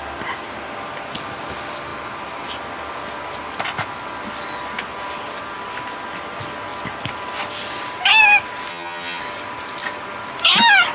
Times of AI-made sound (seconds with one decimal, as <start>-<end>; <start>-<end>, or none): 8.7-9.2